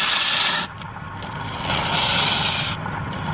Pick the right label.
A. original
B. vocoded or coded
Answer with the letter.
A